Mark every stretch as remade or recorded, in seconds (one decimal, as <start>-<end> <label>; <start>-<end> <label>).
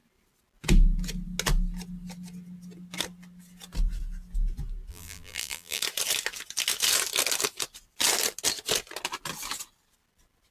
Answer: 0.0-4.9 recorded; 4.9-5.8 remade; 5.8-10.5 recorded